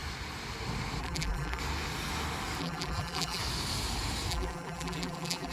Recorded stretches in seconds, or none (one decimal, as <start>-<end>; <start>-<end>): 0.0-1.0; 1.6-2.6; 3.4-4.3